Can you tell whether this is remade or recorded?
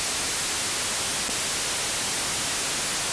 recorded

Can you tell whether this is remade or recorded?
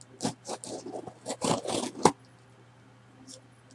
recorded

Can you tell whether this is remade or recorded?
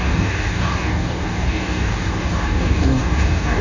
remade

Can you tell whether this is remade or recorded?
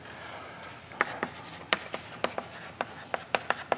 recorded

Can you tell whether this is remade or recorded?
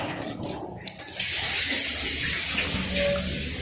recorded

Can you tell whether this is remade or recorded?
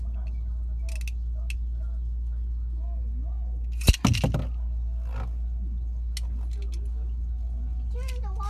recorded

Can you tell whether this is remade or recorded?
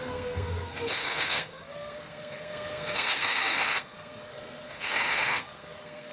remade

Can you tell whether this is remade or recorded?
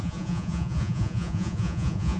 remade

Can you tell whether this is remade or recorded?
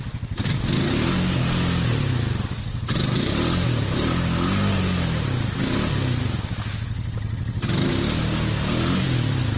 recorded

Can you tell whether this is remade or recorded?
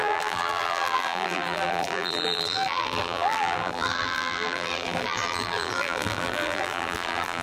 remade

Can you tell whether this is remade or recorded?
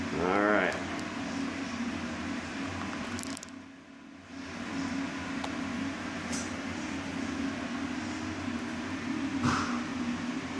recorded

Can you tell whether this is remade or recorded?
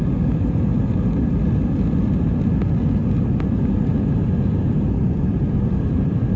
recorded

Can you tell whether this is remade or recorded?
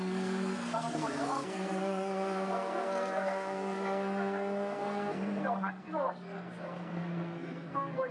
remade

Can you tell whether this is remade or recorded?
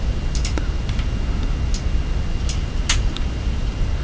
recorded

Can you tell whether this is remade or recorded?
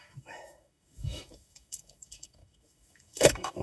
remade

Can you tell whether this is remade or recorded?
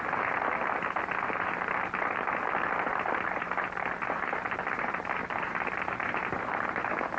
recorded